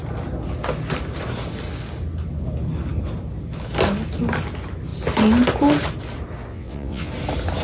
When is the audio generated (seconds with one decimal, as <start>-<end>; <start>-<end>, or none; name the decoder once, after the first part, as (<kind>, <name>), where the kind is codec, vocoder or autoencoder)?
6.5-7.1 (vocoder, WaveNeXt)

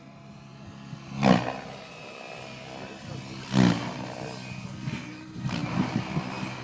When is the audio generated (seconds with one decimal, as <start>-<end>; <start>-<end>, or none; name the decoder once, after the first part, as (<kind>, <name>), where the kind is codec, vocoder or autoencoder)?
none

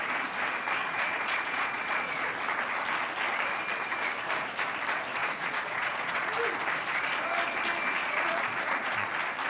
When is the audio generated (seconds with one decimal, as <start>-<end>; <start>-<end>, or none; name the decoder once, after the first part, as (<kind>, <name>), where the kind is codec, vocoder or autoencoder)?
0.8-2.3 (vocoder, Vocos); 5.2-6.3; 8.0-9.1

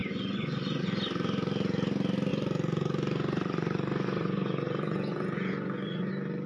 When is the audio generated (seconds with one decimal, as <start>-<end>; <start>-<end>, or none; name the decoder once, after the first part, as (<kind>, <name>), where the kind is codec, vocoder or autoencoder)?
0.0-0.8 (vocoder, Vocos); 2.3-6.1

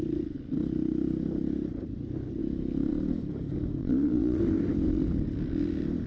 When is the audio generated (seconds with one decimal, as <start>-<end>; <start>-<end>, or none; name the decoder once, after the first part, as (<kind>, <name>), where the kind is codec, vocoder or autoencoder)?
3.8-4.4 (vocoder, Vocos)

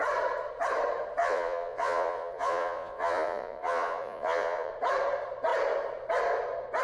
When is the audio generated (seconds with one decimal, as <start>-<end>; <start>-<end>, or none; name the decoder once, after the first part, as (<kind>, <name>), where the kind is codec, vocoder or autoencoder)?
1.2-4.7 (vocoder, Vocos)